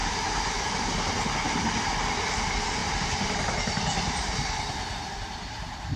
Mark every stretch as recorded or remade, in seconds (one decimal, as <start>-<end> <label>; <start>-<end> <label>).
0.0-0.6 remade; 0.6-2.8 recorded; 2.8-6.0 remade